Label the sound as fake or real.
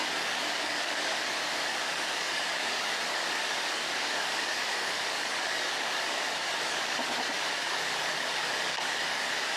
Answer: fake